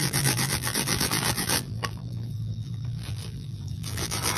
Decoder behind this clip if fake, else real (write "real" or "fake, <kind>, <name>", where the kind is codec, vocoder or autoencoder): fake, vocoder, BigVGAN v2